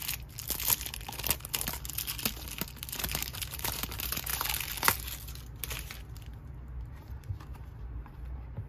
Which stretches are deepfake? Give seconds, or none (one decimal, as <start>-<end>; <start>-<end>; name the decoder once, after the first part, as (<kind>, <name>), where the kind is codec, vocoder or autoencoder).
3.0-4.3 (vocoder, BigVGAN v2); 6.9-8.7